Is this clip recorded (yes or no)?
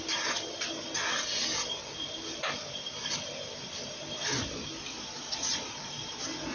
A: yes